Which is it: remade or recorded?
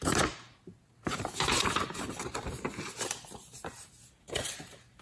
remade